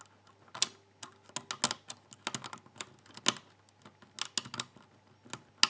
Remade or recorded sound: recorded